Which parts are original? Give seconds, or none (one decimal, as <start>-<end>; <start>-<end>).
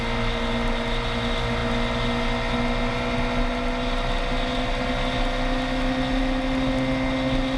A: 0.0-7.6